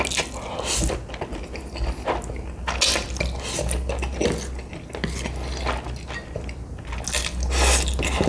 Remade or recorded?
recorded